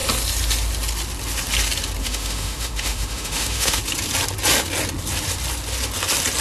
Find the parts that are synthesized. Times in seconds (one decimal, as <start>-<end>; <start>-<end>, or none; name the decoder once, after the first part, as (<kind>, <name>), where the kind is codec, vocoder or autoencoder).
2.0-3.8 (autoencoder, DAC-VAE)